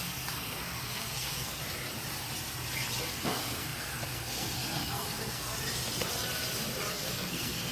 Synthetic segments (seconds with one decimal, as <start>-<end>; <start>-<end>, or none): 0.0-1.6; 3.1-5.5; 6.9-7.7